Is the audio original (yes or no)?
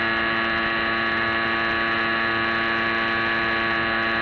yes